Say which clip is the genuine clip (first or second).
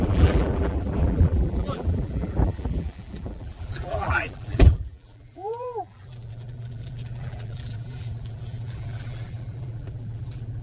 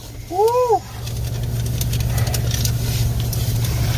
second